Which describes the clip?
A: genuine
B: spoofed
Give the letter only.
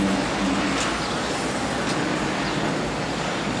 A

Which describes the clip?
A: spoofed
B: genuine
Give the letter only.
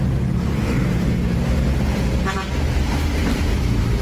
B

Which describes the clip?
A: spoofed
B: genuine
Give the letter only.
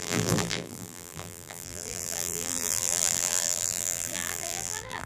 A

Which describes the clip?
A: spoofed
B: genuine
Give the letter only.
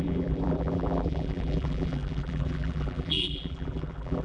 A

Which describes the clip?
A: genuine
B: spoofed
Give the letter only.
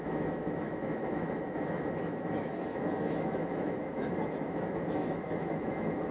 B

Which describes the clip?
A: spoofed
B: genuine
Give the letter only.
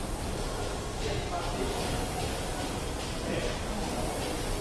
A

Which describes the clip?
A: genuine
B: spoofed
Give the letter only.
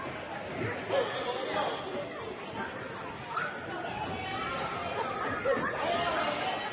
A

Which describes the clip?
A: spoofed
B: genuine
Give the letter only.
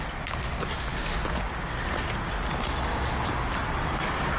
B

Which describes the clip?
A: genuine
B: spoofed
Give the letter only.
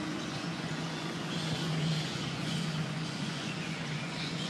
B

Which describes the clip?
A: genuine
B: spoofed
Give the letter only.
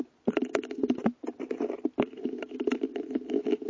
A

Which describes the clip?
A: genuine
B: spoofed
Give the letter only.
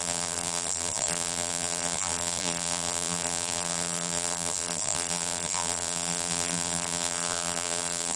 B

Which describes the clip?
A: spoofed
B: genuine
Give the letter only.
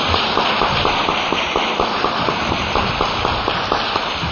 B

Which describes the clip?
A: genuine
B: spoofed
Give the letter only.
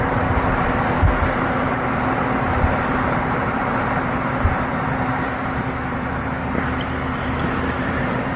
B